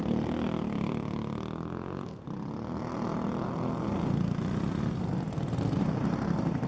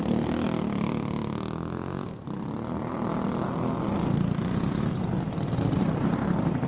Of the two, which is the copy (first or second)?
second